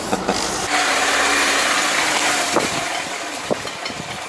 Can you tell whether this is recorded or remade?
recorded